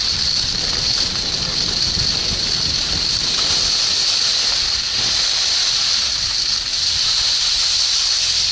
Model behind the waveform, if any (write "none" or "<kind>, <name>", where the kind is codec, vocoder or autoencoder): none